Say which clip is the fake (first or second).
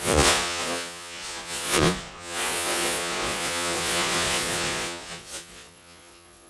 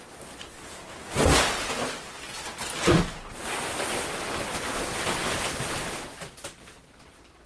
first